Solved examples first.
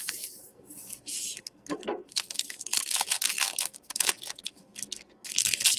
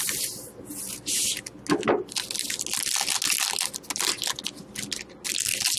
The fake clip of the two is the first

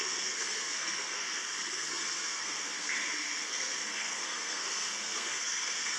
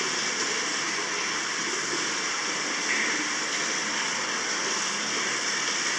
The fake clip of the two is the first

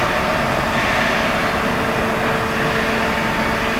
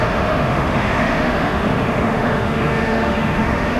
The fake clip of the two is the second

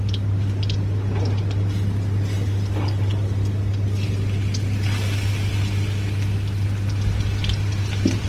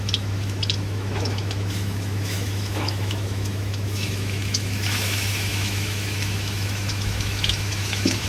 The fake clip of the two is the second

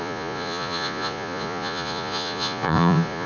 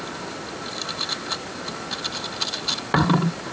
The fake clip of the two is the first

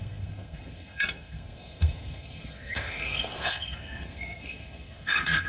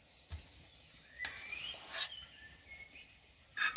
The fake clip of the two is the first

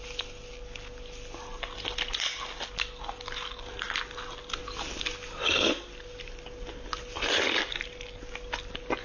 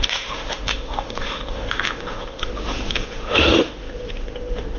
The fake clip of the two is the second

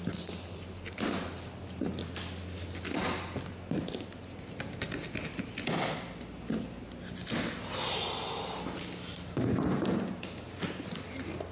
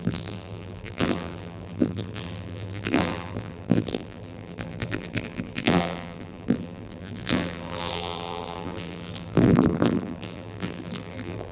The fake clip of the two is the second